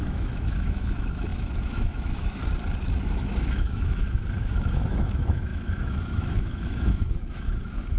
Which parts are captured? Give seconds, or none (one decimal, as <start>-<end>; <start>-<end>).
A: 2.4-3.1